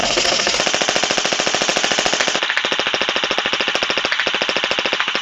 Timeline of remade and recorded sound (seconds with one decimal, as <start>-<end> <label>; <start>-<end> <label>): 0.0-0.6 remade; 0.6-5.2 recorded